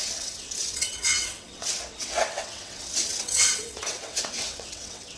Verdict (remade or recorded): remade